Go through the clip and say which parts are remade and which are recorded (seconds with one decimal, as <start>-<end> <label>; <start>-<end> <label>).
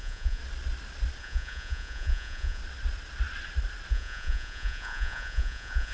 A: 0.0-0.4 remade; 0.4-1.2 recorded; 1.2-2.6 remade; 2.6-3.9 recorded; 3.9-5.9 remade